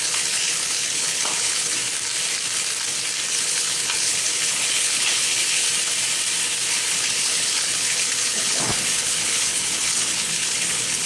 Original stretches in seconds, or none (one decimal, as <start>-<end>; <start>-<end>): 1.8-3.3; 5.6-6.7